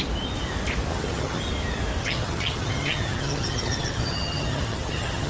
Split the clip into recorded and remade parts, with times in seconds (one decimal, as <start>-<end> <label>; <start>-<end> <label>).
0.0-0.9 recorded; 0.9-1.4 remade; 1.4-2.0 recorded; 2.0-5.3 remade